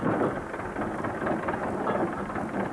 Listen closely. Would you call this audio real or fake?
real